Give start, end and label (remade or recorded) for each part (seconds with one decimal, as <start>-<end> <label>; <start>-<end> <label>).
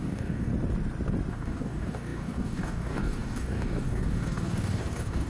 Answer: 0.0-0.5 remade; 0.5-1.3 recorded; 1.3-5.3 remade